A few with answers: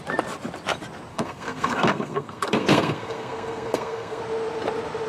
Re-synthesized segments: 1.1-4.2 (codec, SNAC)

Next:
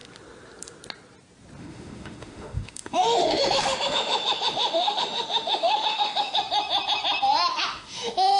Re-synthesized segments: 1.6-6.4 (autoencoder, DAC-VAE); 7.5-8.4

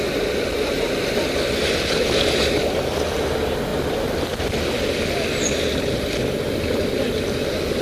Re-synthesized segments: 3.7-5.9 (vocoder, BigVGAN v2)

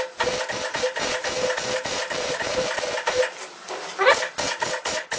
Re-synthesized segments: 1.1-4.2 (vocoder, BigVGAN v2)

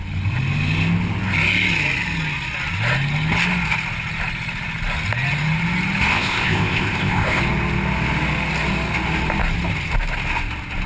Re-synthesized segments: 6.1-7.4 (codec, ZipCodec)